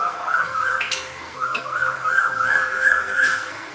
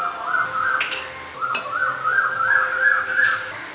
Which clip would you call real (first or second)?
second